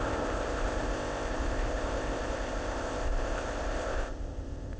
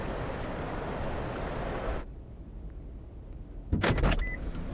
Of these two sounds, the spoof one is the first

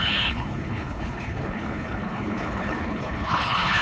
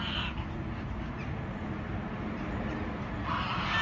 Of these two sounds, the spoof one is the first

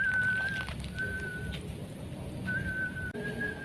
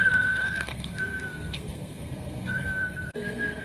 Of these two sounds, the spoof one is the second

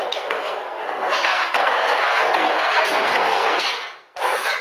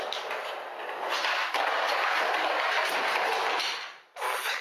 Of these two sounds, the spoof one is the first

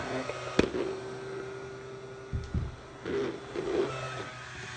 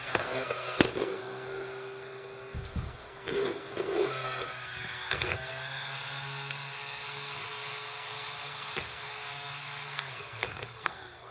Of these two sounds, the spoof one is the second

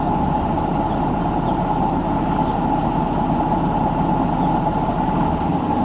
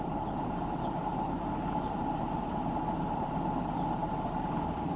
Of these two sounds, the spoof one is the second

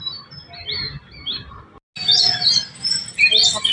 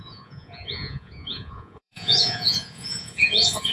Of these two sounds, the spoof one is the second